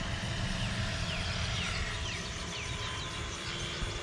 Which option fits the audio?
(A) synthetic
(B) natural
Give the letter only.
B